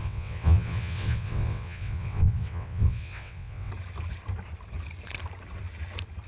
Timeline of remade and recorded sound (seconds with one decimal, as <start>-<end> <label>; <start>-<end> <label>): 0.0-3.7 remade; 3.7-6.3 recorded